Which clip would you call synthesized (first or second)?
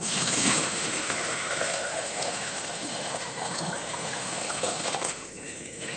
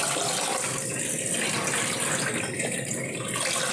first